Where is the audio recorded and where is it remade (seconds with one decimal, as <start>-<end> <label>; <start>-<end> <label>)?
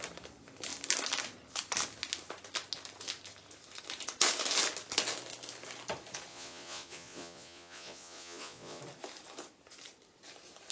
0.0-6.3 recorded; 6.3-8.8 remade; 8.8-10.7 recorded